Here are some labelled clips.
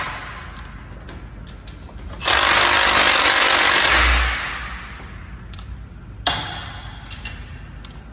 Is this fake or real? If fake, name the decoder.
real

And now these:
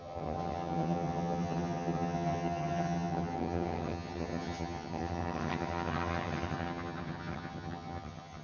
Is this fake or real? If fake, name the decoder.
fake, vocoder, HiFi-GAN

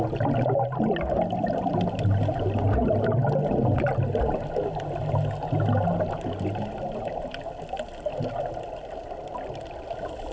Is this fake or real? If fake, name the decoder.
real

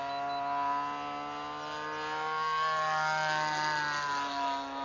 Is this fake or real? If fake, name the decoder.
real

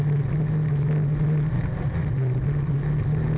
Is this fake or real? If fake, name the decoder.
real